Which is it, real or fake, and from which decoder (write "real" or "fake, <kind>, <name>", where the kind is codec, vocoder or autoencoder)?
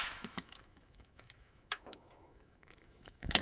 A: fake, autoencoder, DAC-VAE